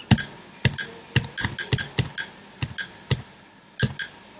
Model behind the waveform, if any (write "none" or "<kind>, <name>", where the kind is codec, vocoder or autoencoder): none